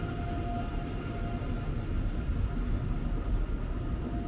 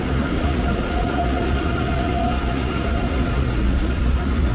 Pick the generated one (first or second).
second